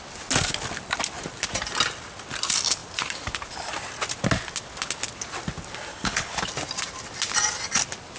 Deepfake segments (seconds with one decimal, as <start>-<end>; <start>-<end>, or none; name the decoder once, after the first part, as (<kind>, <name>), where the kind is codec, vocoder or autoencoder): 5.9-6.5 (codec, HILCodec)